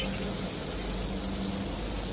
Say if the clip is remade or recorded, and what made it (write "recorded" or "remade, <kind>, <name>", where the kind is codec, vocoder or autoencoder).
recorded